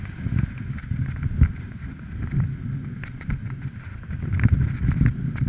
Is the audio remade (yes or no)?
no